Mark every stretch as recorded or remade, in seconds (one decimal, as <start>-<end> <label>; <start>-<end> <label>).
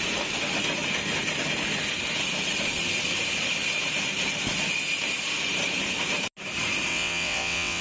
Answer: 0.0-6.9 recorded; 6.9-7.8 remade